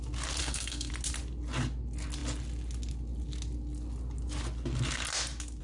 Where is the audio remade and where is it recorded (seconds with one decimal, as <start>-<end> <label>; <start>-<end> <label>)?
0.0-0.4 recorded; 0.4-0.9 remade; 0.9-5.6 recorded

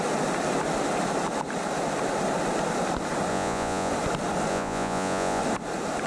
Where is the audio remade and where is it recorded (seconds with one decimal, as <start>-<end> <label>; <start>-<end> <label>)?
0.0-3.3 recorded; 3.3-3.9 remade; 3.9-4.5 recorded; 4.5-5.4 remade; 5.4-6.1 recorded

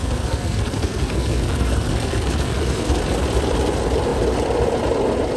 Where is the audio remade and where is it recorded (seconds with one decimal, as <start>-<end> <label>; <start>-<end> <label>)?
0.0-3.0 remade; 3.0-5.4 recorded